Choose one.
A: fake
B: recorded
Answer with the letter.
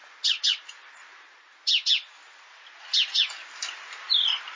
A